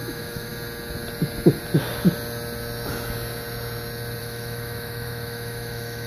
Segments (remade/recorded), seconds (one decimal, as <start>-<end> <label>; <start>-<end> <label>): 0.0-0.5 remade; 0.5-4.2 recorded; 4.2-6.1 remade